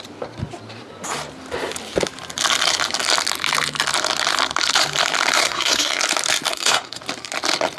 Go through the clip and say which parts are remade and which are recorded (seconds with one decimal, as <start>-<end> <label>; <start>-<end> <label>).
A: 0.0-5.4 recorded; 5.4-6.0 remade; 6.0-6.5 recorded; 6.5-7.0 remade; 7.0-7.8 recorded